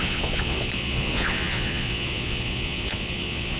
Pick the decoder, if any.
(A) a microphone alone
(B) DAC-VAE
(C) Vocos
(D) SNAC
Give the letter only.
C